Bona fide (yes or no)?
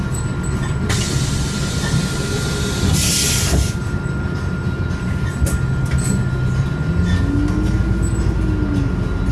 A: yes